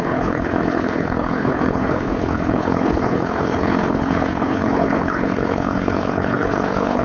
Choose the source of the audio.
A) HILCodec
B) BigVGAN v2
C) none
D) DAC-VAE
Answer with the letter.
A